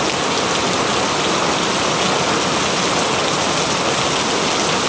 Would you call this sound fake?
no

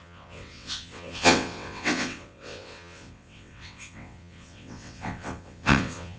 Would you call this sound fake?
yes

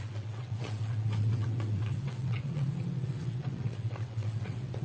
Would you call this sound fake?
yes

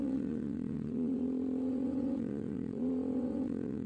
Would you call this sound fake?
yes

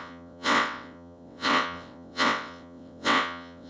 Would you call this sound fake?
yes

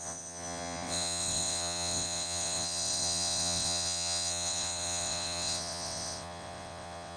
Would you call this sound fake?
yes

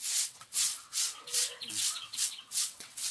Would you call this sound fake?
yes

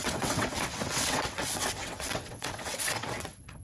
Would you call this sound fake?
yes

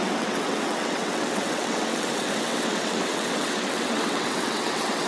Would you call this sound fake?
yes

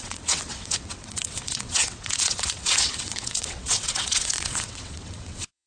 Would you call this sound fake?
yes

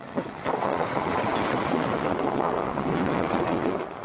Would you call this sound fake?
yes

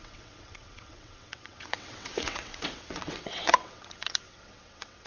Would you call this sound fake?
yes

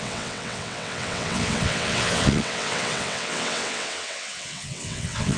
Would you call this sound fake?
yes